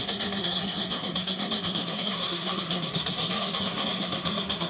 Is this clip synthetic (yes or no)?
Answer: yes